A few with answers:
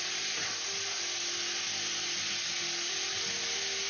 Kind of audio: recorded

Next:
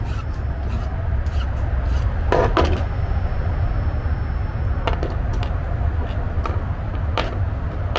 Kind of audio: recorded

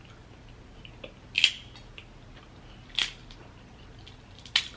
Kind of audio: recorded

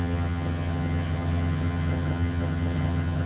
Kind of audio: remade